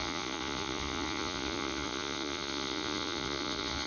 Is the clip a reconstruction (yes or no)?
yes